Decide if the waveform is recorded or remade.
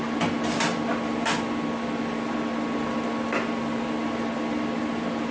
recorded